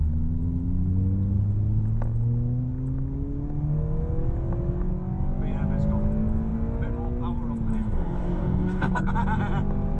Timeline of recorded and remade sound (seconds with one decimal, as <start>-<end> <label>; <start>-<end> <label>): 0.0-7.7 recorded; 7.7-9.1 remade; 9.1-10.0 recorded